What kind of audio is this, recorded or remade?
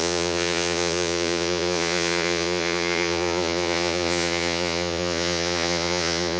remade